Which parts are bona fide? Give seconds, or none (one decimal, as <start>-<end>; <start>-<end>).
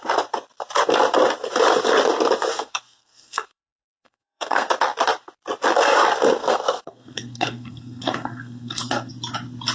0.0-2.6; 4.7-6.4; 9.1-9.7